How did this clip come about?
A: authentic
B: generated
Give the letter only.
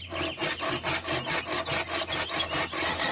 A